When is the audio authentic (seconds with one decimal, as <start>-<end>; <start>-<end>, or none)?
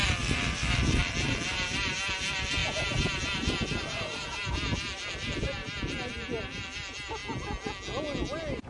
7.2-8.7